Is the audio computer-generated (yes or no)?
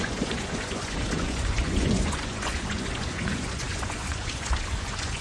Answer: yes